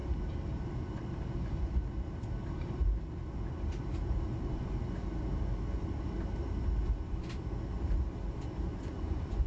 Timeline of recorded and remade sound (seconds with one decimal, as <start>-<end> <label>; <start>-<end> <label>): 0.0-8.7 recorded; 8.7-9.5 remade